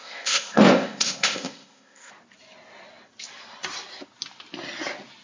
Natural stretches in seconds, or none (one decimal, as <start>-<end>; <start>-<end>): 2.1-5.2